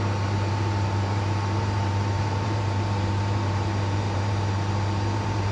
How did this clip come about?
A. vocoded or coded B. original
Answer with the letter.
A